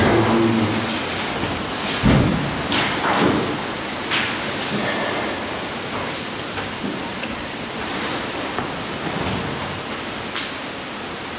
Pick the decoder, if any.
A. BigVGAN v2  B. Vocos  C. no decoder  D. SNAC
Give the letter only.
C